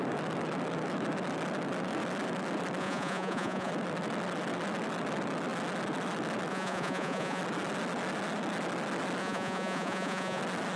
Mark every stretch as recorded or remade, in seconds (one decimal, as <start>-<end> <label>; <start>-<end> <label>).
0.0-2.8 recorded; 2.8-3.7 remade; 3.7-6.5 recorded; 6.5-7.4 remade; 7.4-9.2 recorded; 9.2-10.4 remade; 10.4-10.8 recorded